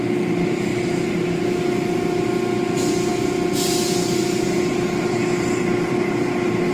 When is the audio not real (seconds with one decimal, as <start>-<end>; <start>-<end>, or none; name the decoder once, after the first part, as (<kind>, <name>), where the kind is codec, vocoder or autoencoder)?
none

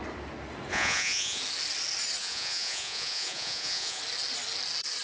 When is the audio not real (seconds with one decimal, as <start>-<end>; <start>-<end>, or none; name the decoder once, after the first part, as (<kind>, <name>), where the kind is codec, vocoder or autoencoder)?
0.7-1.4 (vocoder, Vocos); 2.2-4.0

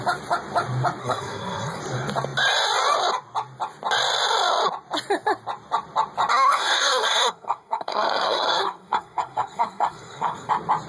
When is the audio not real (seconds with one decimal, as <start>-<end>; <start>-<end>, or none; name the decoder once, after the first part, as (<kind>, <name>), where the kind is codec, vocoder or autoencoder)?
1.0-1.8 (codec, SNAC); 6.3-10.5